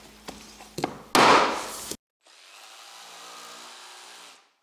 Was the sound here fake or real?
real